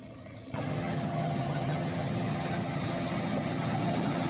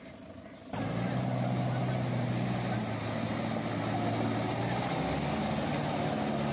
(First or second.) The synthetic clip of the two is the first